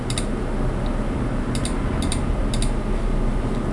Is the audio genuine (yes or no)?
yes